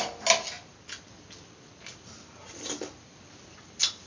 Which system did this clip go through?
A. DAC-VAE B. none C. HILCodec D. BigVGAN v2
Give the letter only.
B